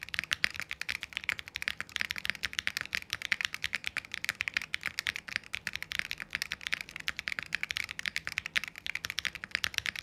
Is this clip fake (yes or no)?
no